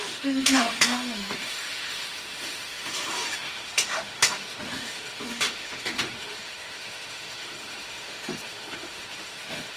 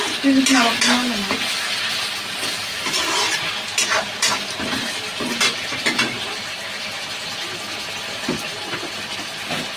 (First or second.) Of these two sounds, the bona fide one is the second